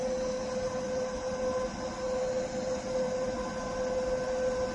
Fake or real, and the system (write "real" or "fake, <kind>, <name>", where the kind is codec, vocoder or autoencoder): real